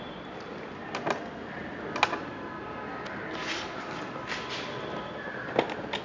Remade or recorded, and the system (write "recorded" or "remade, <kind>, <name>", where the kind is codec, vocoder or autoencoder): recorded